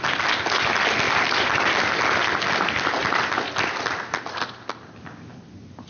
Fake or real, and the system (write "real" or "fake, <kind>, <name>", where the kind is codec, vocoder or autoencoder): real